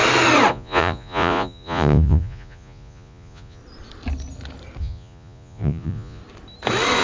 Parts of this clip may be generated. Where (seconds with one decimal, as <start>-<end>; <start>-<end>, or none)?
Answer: 0.5-3.6; 4.8-6.2